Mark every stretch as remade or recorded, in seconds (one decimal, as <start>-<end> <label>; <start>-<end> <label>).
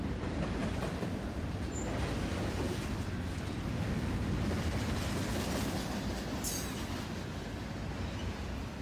0.0-8.8 recorded